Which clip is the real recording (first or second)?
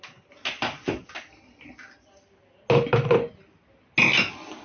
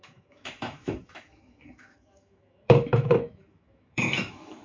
first